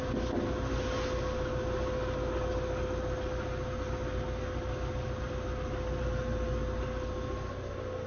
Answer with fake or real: real